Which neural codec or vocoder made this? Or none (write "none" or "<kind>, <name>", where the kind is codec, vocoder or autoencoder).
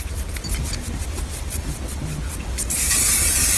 none